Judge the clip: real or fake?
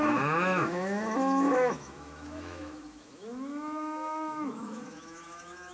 fake